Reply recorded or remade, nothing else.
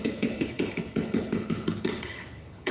remade